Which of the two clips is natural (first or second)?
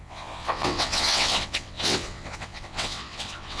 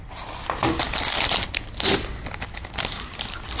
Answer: second